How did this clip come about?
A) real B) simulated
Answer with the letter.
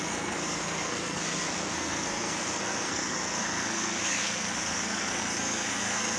B